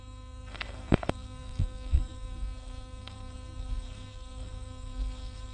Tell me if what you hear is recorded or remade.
remade